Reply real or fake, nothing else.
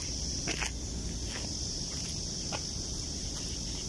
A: real